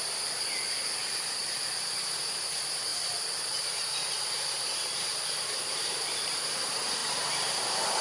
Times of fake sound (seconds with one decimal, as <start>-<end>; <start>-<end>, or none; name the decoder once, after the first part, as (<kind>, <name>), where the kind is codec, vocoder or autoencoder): 1.4-2.5 (vocoder, BigVGAN v2); 2.9-6.4; 7.0-8.0